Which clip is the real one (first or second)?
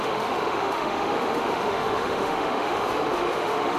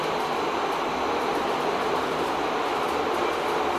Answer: second